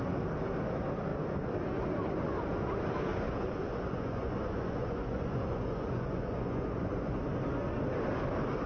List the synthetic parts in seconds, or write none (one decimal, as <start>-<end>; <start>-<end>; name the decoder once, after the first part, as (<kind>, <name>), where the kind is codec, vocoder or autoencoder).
3.1-7.2 (vocoder, Vocos)